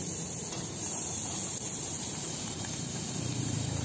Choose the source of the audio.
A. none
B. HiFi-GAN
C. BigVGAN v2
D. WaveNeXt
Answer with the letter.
C